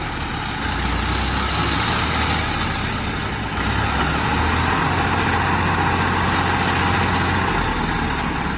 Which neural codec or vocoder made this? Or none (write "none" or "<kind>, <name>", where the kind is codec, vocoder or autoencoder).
none